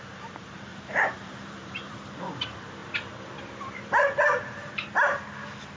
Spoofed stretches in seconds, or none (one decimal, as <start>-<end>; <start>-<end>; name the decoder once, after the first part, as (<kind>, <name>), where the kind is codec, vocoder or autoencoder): 0.7-2.4 (vocoder, BigVGAN v2); 2.8-4.9